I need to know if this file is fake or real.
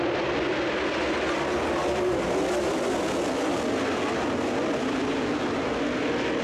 real